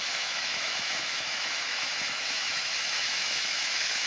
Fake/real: fake